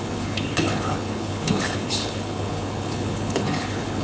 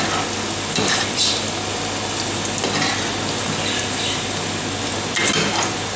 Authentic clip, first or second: second